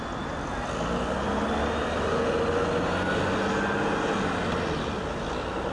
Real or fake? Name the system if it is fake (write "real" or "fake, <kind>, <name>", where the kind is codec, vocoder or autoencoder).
real